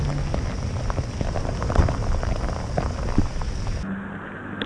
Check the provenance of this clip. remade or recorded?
recorded